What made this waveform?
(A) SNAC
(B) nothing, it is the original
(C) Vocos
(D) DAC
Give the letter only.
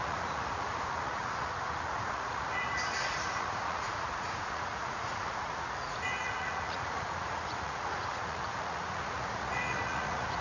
C